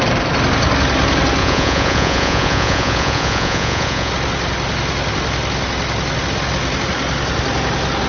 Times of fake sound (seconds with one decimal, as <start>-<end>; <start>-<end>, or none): 1.4-4.1